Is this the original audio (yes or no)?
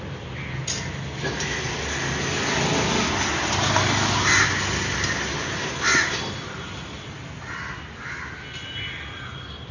yes